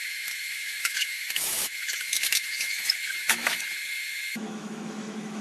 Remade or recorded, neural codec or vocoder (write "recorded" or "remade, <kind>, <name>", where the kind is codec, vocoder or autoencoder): remade, autoencoder, DAC-VAE